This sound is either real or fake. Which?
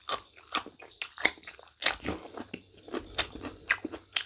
real